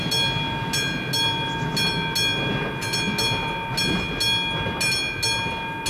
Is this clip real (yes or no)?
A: yes